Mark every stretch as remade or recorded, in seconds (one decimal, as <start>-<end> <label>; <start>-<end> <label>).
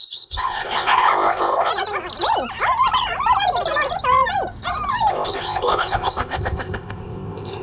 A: 0.0-1.7 remade; 1.7-5.1 recorded; 5.1-7.6 remade